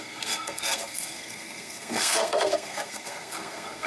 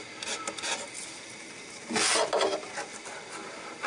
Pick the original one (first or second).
second